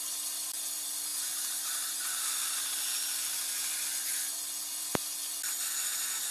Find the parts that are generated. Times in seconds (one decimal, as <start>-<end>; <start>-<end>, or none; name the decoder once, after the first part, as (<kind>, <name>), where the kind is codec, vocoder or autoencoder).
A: none

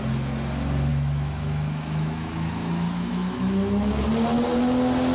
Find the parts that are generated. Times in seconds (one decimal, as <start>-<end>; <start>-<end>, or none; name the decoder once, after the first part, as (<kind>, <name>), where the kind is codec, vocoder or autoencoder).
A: 0.9-4.0 (autoencoder, DAC-VAE)